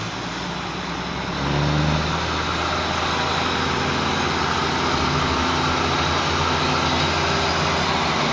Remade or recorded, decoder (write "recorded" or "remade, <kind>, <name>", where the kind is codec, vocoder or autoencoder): recorded